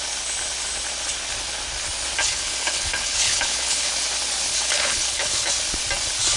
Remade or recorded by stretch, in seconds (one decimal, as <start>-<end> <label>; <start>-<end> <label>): 0.0-2.2 recorded; 2.2-3.9 remade; 3.9-4.5 recorded; 4.5-5.5 remade; 5.5-6.4 recorded